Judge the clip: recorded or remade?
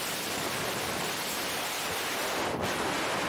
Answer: remade